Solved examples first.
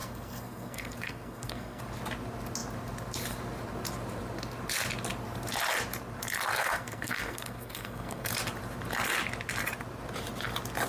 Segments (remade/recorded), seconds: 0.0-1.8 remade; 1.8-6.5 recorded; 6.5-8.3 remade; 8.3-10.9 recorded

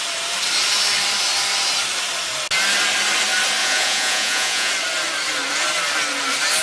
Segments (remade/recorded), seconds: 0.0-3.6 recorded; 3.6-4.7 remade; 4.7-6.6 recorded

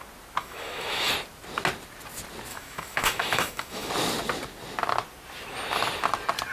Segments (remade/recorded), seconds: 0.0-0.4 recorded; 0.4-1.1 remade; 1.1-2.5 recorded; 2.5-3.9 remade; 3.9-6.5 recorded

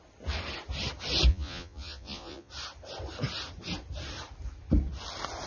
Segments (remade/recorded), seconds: 0.0-1.3 recorded; 1.3-2.5 remade; 2.5-5.5 recorded